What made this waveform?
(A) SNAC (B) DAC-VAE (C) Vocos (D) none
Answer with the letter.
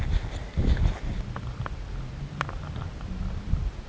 D